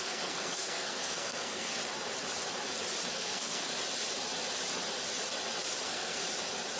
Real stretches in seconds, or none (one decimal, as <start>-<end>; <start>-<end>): 1.8-3.1; 3.7-5.8; 6.2-6.8